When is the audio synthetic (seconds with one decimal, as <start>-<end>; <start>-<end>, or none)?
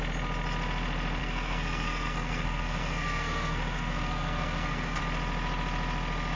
1.2-5.0